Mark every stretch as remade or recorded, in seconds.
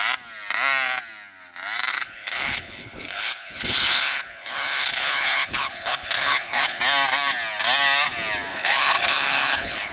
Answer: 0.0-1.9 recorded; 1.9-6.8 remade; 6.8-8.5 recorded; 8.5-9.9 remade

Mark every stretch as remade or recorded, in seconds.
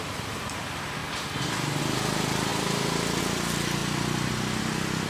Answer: 0.0-5.1 recorded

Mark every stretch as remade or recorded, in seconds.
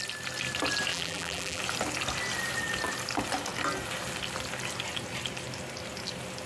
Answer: 0.0-0.9 recorded; 0.9-1.6 remade; 1.6-6.5 recorded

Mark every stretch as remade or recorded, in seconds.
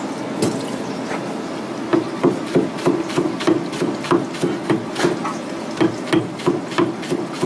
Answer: 0.0-7.5 recorded